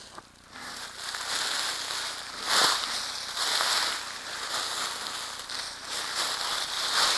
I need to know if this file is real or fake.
real